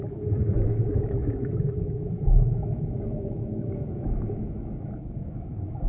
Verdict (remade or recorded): remade